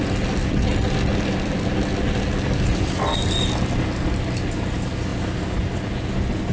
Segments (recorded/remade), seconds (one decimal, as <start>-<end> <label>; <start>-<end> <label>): 0.0-6.5 recorded

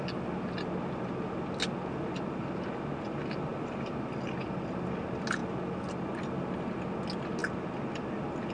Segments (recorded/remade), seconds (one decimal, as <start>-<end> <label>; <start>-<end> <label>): 0.0-8.5 recorded

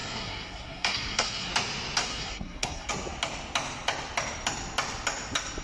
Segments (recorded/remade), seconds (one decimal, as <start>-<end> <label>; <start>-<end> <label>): 0.0-1.5 remade; 1.5-2.0 recorded; 2.0-2.9 remade; 2.9-5.6 recorded

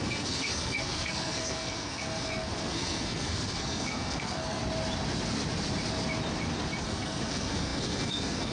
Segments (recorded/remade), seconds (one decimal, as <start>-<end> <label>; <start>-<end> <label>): 0.0-4.6 remade; 4.6-6.8 recorded; 6.8-8.5 remade

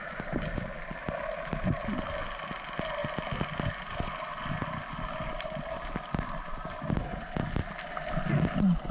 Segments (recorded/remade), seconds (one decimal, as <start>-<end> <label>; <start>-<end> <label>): 0.0-8.9 recorded